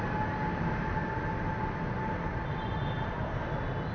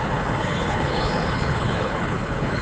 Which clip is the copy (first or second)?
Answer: second